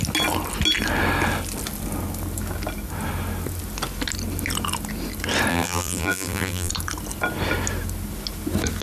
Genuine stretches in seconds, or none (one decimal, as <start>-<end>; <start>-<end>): 0.0-5.5; 6.7-8.8